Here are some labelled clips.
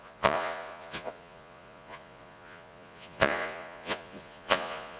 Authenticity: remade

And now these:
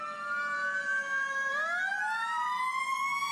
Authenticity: recorded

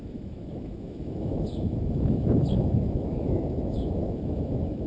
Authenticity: remade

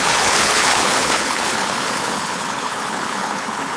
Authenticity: remade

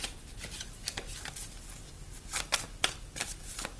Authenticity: recorded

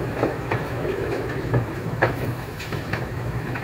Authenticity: remade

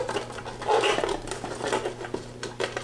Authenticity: recorded